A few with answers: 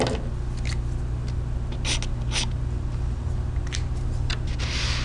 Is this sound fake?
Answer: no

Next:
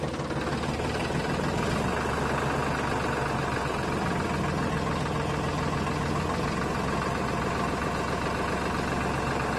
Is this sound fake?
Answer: no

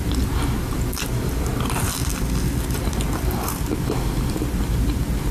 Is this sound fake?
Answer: no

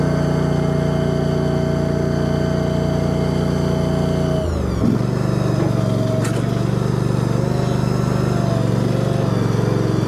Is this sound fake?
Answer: no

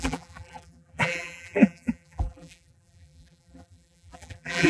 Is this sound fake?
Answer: yes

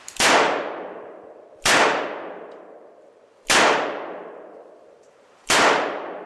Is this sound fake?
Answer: yes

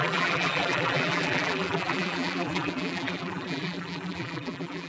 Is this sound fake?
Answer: yes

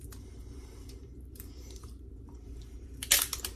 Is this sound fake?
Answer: yes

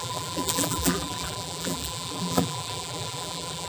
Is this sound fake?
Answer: yes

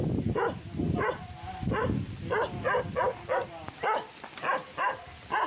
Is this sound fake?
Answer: no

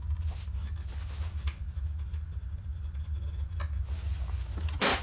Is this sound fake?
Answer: no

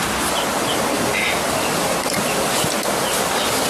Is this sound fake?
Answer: no